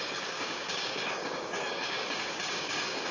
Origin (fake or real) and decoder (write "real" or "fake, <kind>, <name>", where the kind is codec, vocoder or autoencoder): fake, codec, DAC